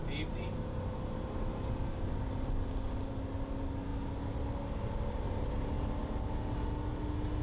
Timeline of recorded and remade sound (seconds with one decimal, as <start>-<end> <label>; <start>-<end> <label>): 0.0-7.4 recorded